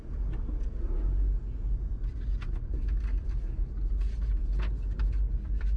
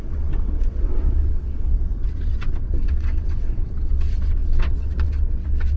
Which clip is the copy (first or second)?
second